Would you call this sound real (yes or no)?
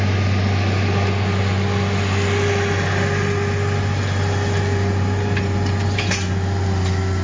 yes